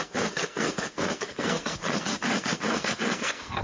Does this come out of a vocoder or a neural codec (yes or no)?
yes